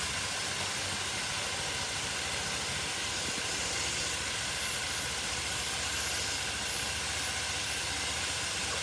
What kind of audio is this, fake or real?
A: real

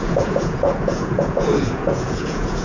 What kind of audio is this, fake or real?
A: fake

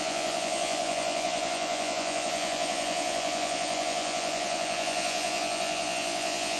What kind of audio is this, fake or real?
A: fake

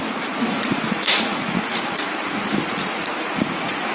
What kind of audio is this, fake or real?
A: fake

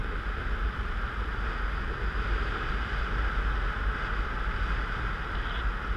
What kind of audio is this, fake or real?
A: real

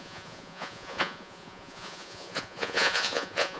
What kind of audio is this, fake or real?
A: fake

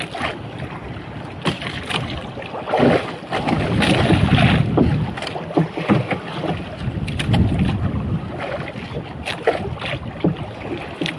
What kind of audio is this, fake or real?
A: real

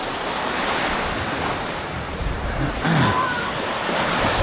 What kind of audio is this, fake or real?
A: real